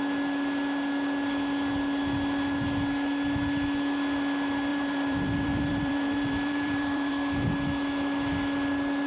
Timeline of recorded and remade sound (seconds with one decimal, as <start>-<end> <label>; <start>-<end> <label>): 0.0-4.7 recorded; 4.7-7.1 remade; 7.1-9.1 recorded